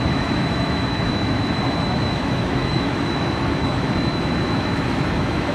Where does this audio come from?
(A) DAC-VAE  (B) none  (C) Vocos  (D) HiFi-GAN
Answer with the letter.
A